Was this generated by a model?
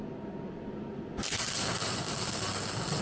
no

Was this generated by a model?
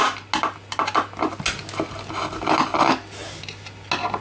no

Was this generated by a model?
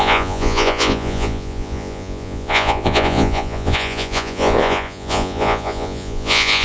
yes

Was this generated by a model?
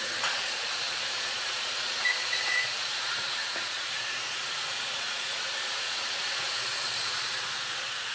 yes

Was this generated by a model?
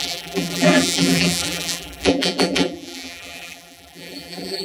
yes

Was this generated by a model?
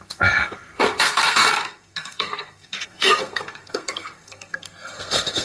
yes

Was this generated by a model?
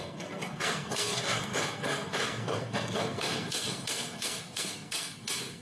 yes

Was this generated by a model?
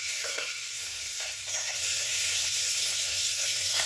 yes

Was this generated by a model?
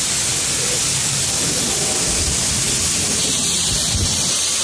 yes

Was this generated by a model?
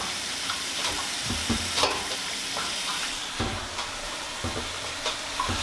yes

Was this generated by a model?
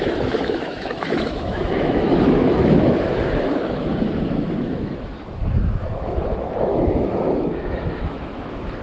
yes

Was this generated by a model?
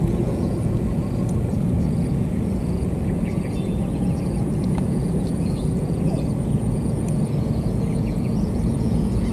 yes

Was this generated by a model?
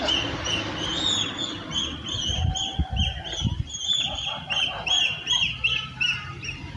no